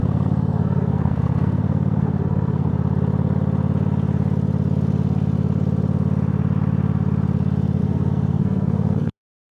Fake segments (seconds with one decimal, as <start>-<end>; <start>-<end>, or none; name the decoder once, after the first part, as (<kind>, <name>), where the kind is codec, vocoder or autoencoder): 0.0-2.7 (codec, SNAC); 7.8-9.5